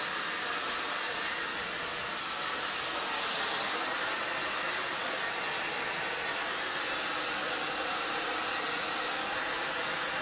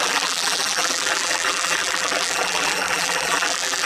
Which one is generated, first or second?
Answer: second